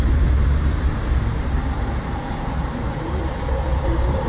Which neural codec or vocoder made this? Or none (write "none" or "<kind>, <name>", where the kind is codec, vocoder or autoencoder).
vocoder, BigVGAN v2